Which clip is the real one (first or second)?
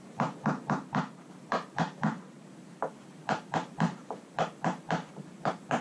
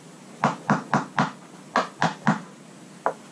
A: second